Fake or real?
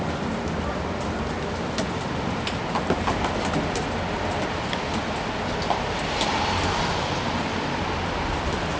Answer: real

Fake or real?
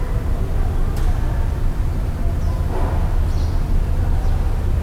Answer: real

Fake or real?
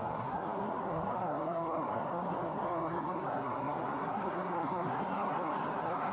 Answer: fake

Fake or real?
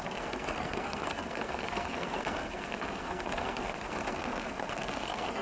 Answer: fake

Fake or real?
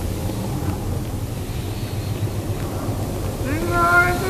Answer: real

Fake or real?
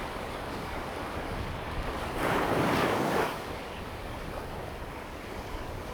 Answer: fake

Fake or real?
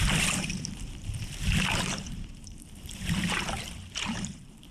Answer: fake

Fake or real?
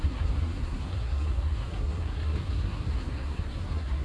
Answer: fake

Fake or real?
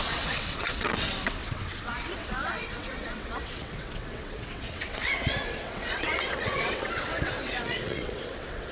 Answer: fake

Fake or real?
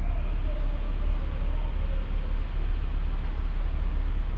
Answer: real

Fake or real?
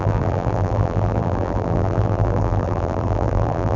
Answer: fake